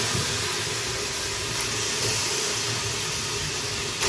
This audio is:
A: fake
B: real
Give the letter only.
B